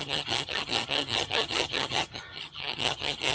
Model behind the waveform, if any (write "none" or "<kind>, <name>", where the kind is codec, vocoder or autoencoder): vocoder, HiFi-GAN